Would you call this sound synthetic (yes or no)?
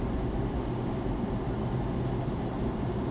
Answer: no